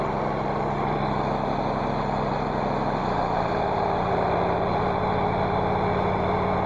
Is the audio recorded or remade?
recorded